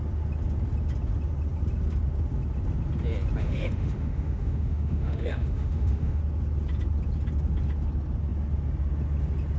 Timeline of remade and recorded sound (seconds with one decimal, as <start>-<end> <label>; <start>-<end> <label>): 0.0-3.4 recorded; 3.4-6.2 remade; 6.2-9.6 recorded